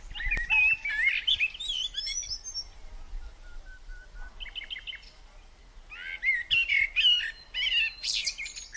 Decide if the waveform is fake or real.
real